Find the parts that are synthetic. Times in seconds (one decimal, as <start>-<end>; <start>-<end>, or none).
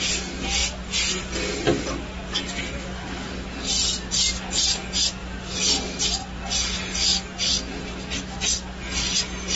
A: none